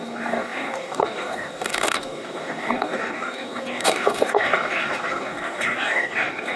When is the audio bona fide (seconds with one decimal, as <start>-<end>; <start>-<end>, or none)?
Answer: none